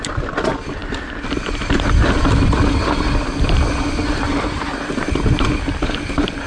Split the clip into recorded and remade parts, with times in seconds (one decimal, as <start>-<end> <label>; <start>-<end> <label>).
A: 0.0-6.5 recorded